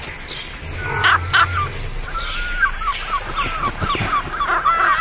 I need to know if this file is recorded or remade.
recorded